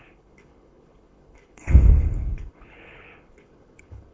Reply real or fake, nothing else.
fake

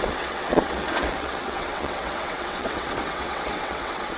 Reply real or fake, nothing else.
fake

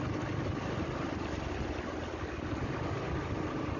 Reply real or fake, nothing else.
real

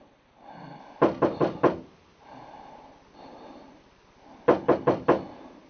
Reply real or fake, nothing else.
real